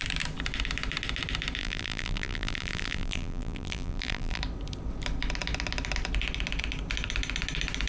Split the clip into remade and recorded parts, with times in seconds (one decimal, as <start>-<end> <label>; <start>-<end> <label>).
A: 0.0-1.6 recorded; 1.6-4.4 remade; 4.4-7.9 recorded